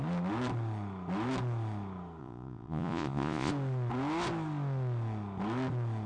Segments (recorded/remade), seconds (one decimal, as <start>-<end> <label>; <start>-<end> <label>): 0.0-2.2 recorded; 2.2-3.5 remade; 3.5-6.1 recorded